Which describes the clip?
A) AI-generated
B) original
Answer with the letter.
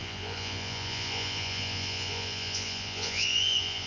A